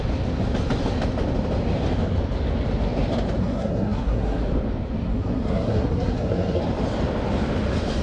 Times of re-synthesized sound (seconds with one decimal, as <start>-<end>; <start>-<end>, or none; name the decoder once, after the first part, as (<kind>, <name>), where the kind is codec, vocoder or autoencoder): 3.4-4.4 (codec, SNAC); 5.0-6.6